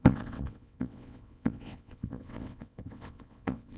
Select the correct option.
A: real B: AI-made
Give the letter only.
B